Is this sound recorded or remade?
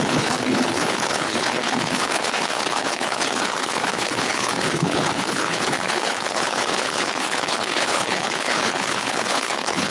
remade